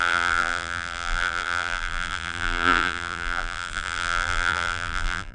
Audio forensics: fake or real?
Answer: fake